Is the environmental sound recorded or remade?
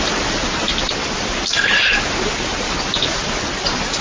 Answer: recorded